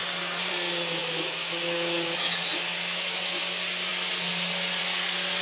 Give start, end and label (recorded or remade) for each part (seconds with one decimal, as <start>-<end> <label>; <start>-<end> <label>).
0.0-1.0 recorded; 1.0-3.4 remade; 3.4-5.4 recorded